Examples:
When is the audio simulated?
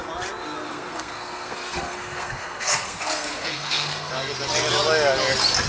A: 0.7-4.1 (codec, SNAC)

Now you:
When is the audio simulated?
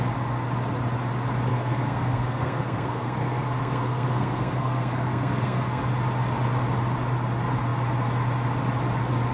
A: 1.5-5.8 (codec, SNAC)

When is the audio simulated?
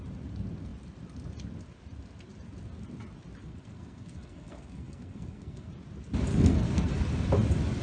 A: 3.4-5.7 (codec, SNAC); 6.3-6.9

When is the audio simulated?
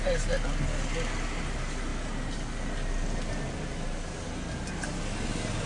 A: none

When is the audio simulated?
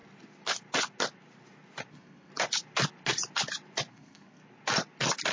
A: 1.9-2.3 (codec, SNAC); 3.9-4.4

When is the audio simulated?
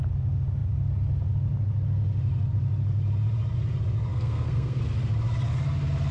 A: 4.1-4.8 (codec, SNAC)